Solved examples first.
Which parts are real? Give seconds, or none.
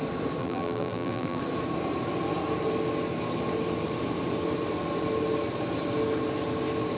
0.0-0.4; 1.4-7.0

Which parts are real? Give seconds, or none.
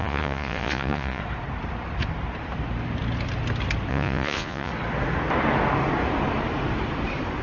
1.2-3.9; 4.7-7.4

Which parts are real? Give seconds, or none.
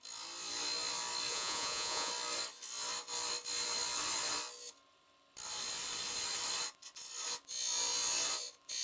0.0-1.3; 2.1-8.8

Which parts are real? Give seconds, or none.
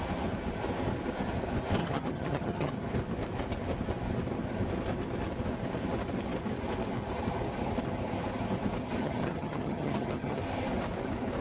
0.0-1.8; 2.7-9.0; 10.4-11.4